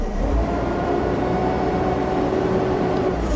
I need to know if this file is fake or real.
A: fake